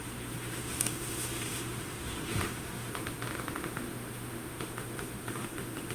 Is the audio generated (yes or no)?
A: yes